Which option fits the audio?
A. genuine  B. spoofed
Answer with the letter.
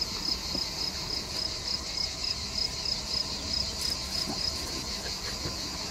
A